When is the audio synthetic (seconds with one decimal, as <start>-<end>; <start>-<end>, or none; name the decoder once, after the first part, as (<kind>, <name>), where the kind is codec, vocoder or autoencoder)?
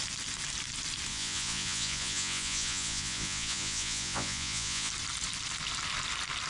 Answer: 1.1-4.9 (vocoder, Vocos)